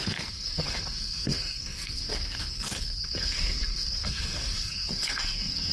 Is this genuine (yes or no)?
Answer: no